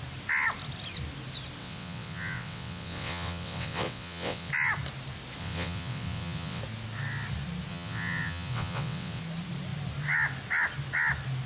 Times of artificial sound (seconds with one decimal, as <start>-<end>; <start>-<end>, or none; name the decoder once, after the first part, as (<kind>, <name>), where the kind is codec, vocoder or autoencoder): 1.6-4.5 (vocoder, WaveNeXt); 5.4-6.6; 7.7-9.2